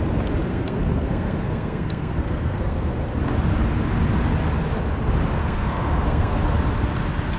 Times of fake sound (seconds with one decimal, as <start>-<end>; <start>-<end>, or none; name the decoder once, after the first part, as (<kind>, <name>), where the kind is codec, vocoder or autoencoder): 0.5-2.9 (codec, SNAC); 5.4-6.4